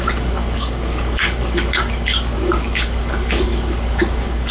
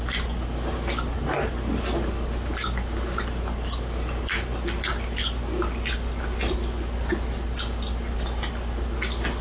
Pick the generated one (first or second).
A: first